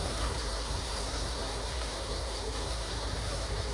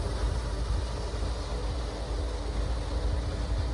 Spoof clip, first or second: first